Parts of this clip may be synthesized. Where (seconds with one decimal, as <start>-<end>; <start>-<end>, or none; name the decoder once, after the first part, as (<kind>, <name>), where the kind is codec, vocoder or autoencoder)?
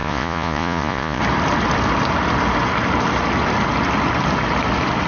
0.0-1.2 (vocoder, Vocos)